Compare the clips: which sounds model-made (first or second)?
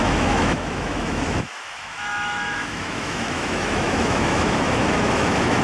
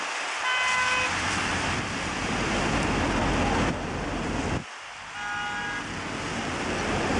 first